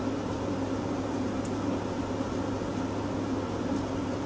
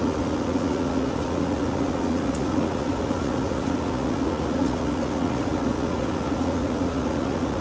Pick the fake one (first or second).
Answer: second